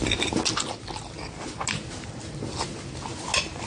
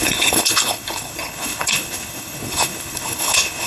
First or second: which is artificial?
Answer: second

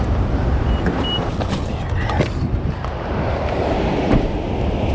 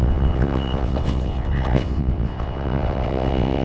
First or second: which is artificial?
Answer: second